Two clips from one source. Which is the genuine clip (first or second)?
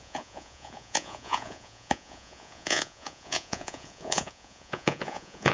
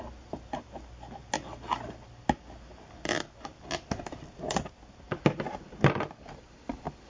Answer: second